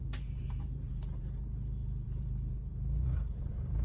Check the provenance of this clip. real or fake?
fake